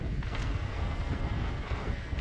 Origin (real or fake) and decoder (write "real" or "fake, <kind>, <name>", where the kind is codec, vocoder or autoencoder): fake, codec, SNAC